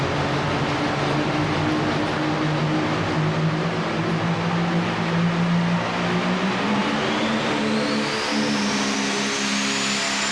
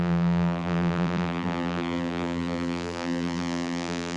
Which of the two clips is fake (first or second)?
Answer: second